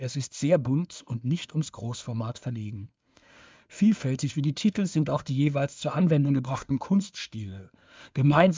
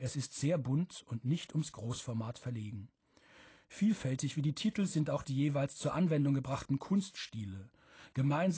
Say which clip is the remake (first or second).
first